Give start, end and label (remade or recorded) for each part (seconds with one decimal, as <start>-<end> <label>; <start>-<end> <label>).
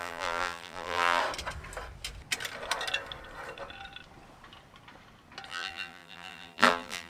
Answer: 0.0-1.2 remade; 1.2-5.5 recorded; 5.5-7.1 remade